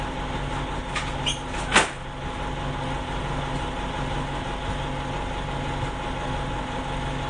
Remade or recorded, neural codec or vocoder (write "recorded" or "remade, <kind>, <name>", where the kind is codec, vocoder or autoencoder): recorded